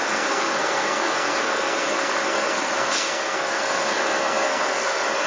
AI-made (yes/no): yes